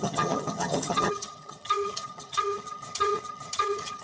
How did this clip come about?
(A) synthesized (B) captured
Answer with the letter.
A